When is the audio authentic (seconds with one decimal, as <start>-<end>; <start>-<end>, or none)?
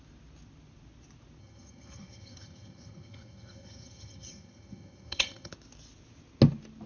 0.0-1.4; 5.5-6.9